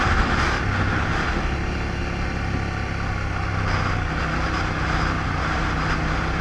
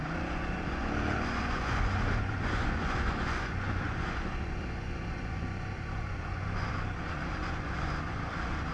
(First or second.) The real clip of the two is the first